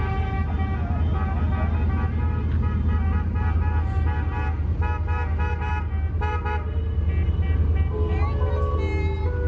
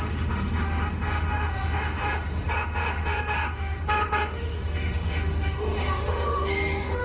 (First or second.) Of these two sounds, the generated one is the second